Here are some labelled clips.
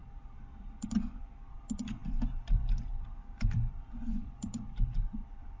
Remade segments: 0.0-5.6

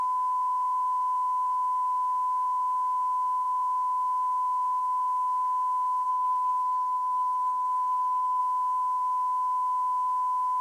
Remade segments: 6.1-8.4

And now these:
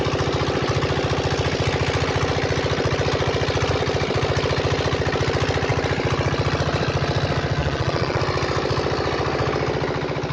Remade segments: 7.6-8.2

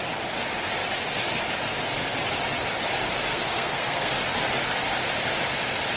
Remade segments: 3.3-4.2

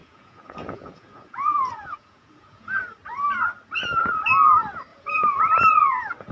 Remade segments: 0.0-2.8; 4.9-5.4

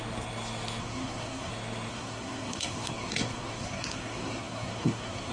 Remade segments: 0.8-1.5; 1.9-5.3

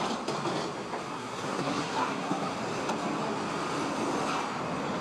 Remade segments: 1.1-2.5

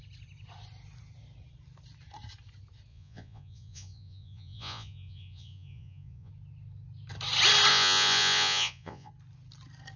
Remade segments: 2.9-6.3; 7.7-9.1